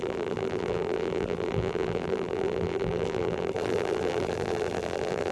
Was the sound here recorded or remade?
remade